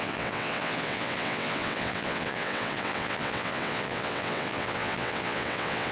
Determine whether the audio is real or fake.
fake